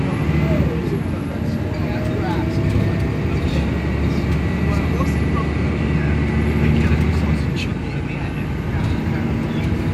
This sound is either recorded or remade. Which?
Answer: recorded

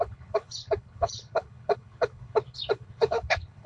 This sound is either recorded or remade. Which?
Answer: remade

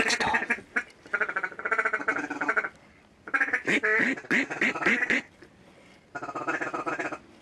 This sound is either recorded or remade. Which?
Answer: recorded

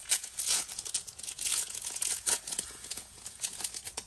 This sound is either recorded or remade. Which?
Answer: remade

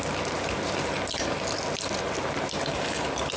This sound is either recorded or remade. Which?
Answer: recorded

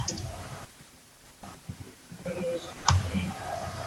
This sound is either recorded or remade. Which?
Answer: remade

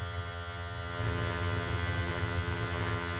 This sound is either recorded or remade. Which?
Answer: remade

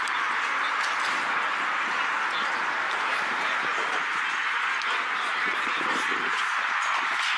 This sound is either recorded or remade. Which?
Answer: recorded